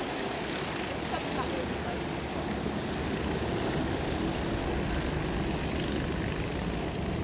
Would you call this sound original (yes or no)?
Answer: yes